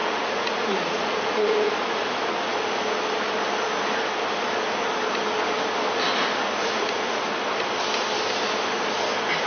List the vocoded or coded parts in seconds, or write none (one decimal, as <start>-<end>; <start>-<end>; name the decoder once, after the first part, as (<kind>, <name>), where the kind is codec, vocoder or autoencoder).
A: 0.0-2.0 (vocoder, Vocos); 6.6-7.2